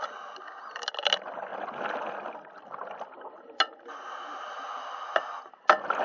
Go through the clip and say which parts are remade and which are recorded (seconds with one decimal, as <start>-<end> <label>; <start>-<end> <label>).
0.0-6.0 recorded